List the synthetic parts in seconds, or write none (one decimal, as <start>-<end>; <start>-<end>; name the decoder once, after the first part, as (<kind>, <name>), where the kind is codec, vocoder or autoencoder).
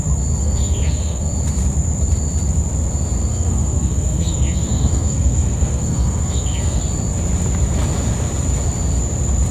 0.4-1.3 (codec, SNAC); 3.3-6.8